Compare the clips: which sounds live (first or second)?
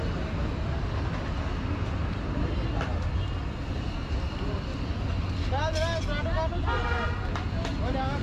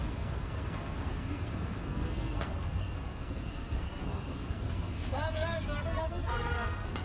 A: first